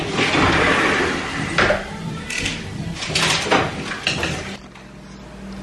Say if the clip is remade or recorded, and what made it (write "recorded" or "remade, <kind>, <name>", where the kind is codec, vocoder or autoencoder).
recorded